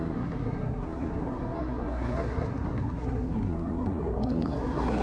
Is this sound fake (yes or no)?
yes